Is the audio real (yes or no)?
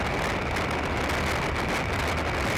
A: yes